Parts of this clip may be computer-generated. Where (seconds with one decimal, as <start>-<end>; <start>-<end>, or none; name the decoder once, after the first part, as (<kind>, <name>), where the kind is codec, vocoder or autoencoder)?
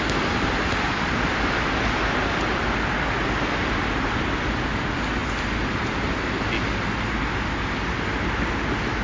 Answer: none